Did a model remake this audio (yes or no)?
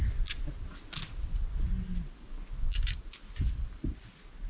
no